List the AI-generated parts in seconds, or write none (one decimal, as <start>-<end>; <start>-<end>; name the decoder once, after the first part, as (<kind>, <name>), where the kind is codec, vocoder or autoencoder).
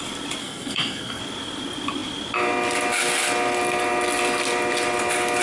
0.4-1.2 (codec, SNAC)